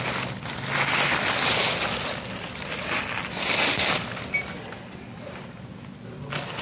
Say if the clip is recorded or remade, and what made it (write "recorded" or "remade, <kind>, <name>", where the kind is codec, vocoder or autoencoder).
recorded